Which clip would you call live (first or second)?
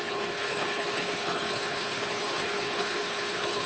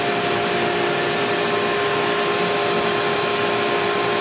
second